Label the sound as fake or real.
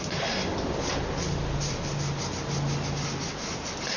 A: real